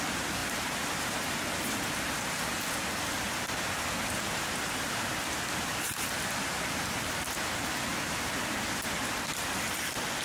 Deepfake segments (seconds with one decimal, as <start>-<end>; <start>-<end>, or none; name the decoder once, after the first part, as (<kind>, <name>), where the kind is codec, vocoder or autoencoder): 0.4-1.9 (vocoder, BigVGAN v2)